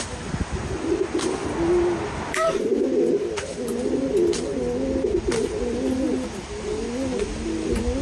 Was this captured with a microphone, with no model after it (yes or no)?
yes